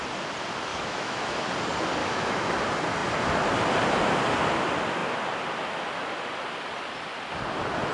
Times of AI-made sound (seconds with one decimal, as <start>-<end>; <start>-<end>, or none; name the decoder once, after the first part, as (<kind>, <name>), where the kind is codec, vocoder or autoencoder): 0.7-1.4 (autoencoder, DAC-VAE); 2.0-2.5